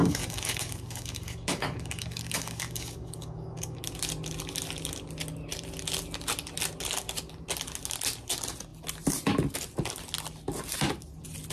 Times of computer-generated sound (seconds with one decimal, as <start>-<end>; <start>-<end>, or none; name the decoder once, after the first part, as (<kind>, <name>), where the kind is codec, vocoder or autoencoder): 0.0-3.8 (codec, DAC)